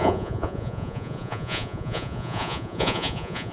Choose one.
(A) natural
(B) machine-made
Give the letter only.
B